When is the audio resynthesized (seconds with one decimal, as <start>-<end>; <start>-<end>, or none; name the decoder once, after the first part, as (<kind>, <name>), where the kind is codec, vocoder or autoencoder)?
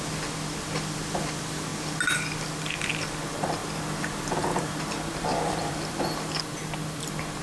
3.6-5.7 (vocoder, BigVGAN v2)